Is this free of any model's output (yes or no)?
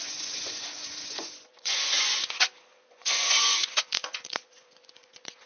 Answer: no